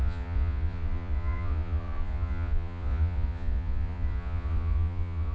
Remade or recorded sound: remade